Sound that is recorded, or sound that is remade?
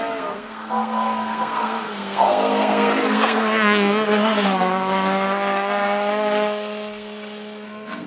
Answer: remade